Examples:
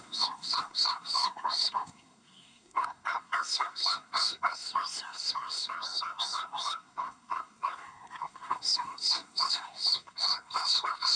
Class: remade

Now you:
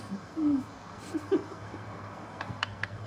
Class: remade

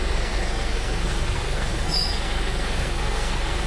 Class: remade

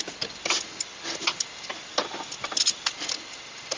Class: recorded